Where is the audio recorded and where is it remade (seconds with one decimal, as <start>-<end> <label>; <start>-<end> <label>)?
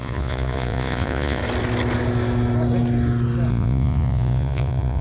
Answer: 0.0-1.4 remade; 1.4-3.5 recorded; 3.5-5.0 remade